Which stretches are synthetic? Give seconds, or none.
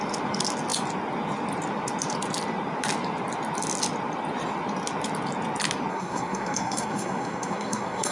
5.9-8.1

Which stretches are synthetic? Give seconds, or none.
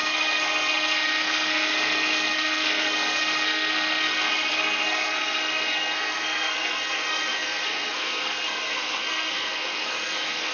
0.0-10.5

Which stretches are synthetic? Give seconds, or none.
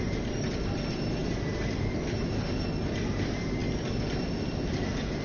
none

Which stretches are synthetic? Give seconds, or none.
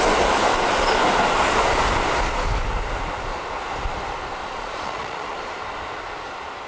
4.4-5.4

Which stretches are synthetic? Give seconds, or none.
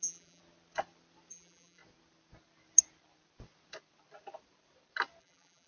0.0-0.4; 1.3-1.8; 5.2-5.7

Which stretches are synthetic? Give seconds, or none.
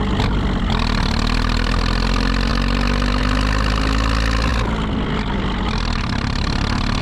2.5-3.2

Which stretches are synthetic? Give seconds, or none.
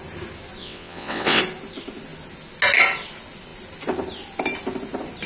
0.6-1.4